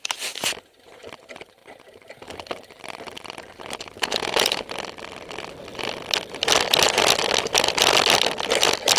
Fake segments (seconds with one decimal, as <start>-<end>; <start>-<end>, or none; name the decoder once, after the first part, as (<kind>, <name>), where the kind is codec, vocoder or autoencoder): none